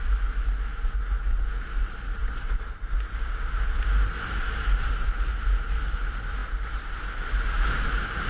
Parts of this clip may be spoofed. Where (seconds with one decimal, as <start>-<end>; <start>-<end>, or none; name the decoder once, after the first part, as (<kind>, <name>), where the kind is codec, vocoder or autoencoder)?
none